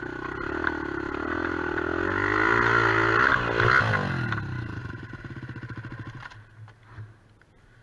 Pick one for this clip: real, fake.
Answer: real